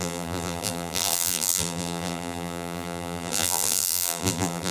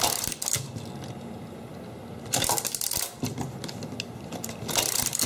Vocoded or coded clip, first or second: first